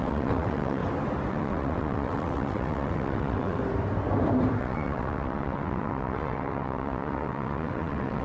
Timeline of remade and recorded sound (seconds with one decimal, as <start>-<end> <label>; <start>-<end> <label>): 0.0-0.8 remade; 0.8-1.3 recorded; 1.3-3.6 remade; 3.6-4.6 recorded; 4.6-8.2 remade